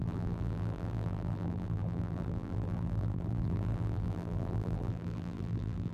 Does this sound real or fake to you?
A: fake